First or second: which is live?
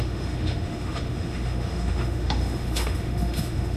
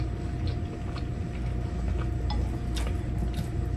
second